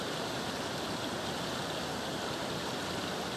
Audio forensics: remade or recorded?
recorded